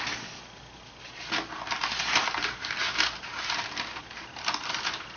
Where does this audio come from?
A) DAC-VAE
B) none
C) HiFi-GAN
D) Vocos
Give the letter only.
B